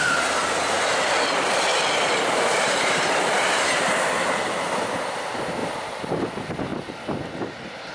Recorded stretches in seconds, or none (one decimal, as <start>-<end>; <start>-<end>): 0.4-2.2; 6.7-7.9